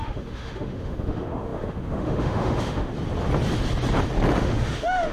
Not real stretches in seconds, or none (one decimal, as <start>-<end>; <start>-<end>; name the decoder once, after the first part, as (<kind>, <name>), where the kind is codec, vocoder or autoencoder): 0.0-2.9 (autoencoder, DAC-VAE); 4.4-5.1